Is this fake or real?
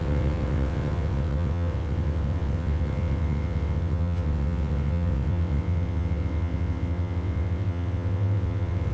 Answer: fake